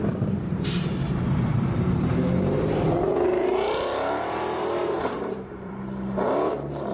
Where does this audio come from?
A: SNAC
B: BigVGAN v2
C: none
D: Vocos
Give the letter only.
B